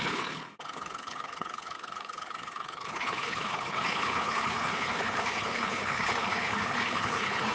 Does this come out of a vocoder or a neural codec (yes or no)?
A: yes